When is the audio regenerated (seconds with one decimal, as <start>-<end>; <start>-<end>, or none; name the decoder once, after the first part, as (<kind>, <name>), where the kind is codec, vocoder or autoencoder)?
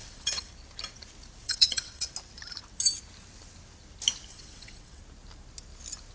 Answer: 0.0-0.5 (vocoder, WaveNeXt); 1.4-2.1; 4.3-5.0